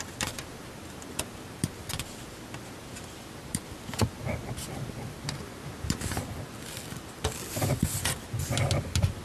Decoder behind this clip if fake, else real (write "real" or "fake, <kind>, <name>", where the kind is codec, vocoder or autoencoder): real